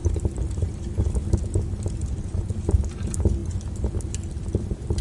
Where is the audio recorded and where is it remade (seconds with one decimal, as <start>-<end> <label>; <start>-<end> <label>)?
0.0-5.0 remade